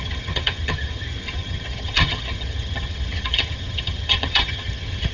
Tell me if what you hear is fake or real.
fake